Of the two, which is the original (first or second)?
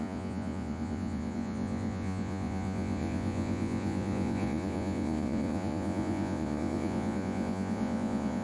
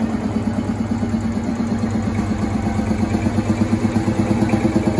second